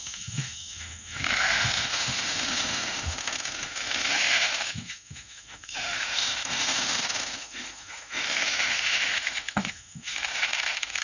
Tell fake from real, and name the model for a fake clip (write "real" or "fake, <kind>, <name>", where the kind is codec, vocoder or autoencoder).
fake, autoencoder, DAC-VAE